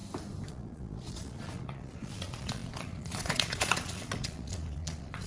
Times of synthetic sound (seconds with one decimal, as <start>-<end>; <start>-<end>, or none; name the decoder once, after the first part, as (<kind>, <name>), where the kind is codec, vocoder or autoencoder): 0.5-5.3 (vocoder, Vocos)